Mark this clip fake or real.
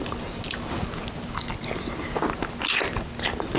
real